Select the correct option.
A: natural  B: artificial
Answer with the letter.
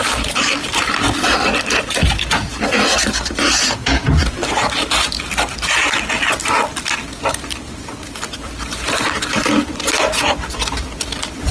B